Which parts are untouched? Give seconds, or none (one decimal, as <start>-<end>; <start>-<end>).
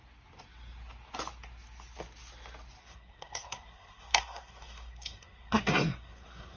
0.0-2.8